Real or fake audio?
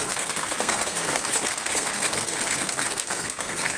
fake